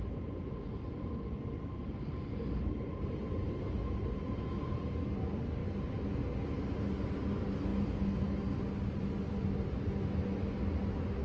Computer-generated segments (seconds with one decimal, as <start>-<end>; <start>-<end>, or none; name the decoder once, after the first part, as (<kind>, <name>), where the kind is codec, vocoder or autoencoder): none